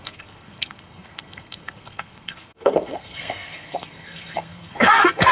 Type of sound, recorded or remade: remade